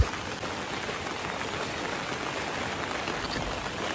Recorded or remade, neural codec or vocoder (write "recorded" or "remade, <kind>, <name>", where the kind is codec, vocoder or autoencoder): recorded